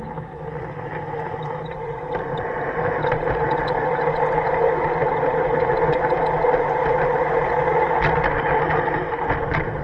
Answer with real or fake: real